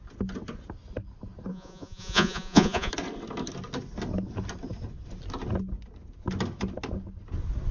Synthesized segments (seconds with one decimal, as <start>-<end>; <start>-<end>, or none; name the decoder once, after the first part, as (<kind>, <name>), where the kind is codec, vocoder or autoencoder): 1.5-2.9 (vocoder, Vocos)